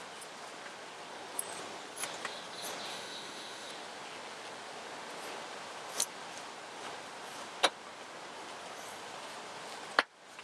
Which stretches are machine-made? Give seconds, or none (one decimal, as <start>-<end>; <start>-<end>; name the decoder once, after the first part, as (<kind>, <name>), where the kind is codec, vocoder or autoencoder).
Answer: 2.9-3.7 (autoencoder, DAC-VAE)